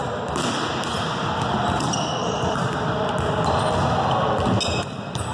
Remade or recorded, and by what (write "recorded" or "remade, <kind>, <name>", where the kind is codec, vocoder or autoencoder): recorded